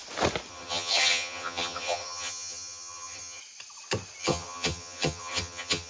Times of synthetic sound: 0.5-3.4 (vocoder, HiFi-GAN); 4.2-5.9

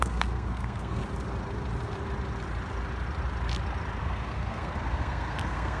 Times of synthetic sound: 0.0-1.0 (codec, SNAC); 4.0-5.8

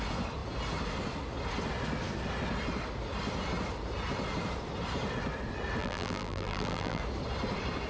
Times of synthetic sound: 5.8-7.0 (vocoder, BigVGAN v2)

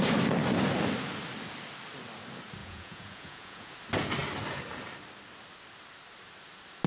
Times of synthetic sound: 2.6-3.7 (vocoder, Vocos)

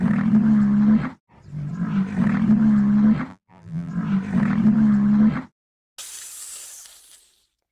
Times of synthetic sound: 3.3-3.9 (vocoder, BigVGAN v2)

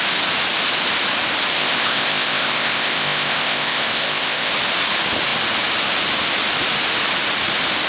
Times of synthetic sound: 1.6-4.5 (codec, ZipCodec)

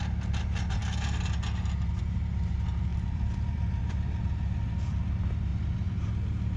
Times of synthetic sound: 2.9-5.0 (vocoder, BigVGAN v2); 5.5-6.1